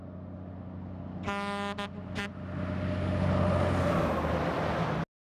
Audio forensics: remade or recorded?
recorded